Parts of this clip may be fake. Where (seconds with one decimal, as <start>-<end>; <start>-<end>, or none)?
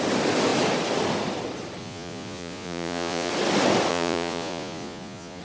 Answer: 1.8-3.3; 3.9-5.4